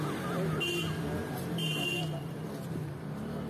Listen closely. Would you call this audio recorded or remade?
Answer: recorded